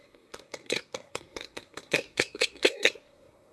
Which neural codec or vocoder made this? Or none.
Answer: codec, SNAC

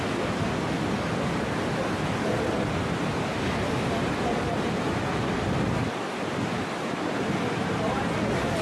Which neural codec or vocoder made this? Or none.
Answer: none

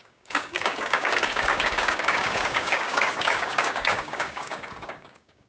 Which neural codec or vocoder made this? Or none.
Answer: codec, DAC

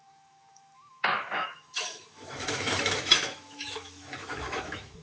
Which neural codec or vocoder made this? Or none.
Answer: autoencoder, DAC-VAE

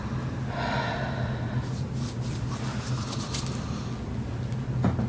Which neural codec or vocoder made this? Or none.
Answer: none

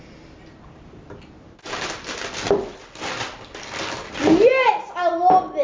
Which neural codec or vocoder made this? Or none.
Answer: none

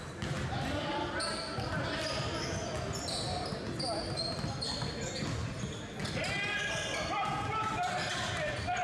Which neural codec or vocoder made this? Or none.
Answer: none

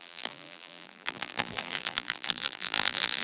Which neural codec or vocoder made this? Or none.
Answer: vocoder, BigVGAN v2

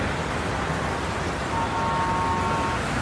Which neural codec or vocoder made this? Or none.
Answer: none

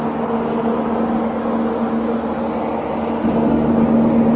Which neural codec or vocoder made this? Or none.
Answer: none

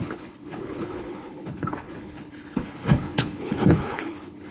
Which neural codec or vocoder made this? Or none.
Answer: codec, HILCodec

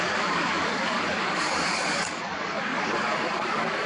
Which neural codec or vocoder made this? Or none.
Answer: codec, DAC